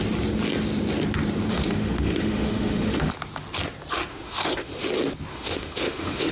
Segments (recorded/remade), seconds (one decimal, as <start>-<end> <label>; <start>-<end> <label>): 0.0-1.5 recorded; 1.5-3.1 remade; 3.1-4.1 recorded; 4.1-4.7 remade; 4.7-5.3 recorded; 5.3-6.3 remade